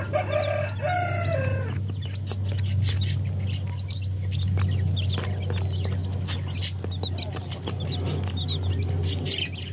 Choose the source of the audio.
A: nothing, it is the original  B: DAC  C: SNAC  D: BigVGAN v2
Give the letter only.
A